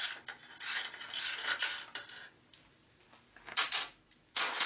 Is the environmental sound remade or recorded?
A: recorded